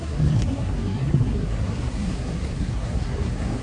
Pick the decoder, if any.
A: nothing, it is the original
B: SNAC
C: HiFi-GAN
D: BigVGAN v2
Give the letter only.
B